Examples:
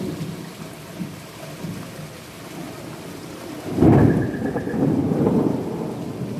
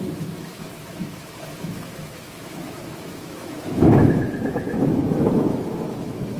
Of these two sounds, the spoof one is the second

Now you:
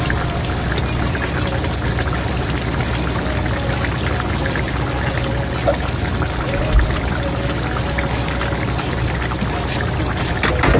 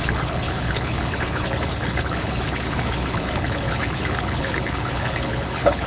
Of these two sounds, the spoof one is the second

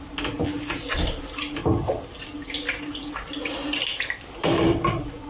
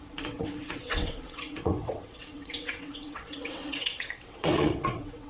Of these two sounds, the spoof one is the second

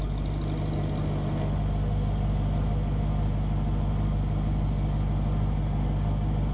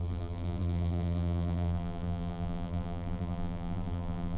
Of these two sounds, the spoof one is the second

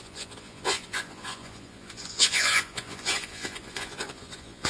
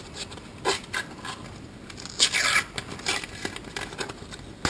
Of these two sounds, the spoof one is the first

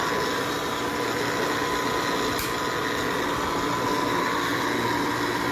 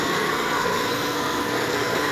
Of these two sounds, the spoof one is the second